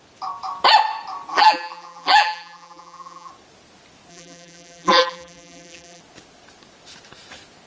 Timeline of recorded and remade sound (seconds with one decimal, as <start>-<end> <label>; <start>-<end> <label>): 0.0-1.3 recorded; 1.3-3.3 remade; 3.3-4.1 recorded; 4.1-6.0 remade; 6.0-7.7 recorded